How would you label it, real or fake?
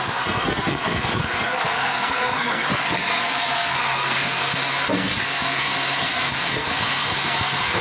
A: fake